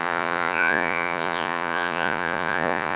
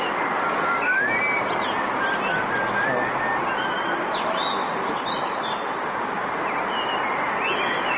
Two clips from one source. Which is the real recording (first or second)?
second